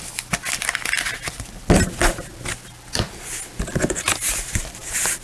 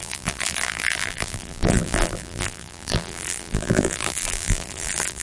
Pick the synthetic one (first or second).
second